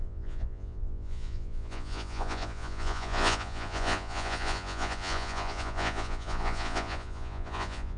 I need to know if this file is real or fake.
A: fake